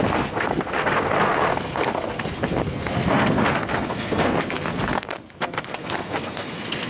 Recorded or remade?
remade